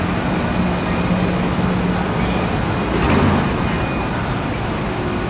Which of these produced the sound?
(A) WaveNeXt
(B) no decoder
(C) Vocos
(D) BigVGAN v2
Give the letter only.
B